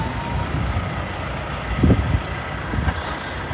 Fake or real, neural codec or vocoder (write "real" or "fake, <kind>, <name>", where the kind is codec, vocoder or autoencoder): real